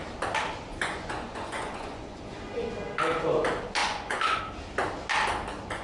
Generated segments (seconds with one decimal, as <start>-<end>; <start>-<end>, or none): 0.7-2.4; 3.8-4.4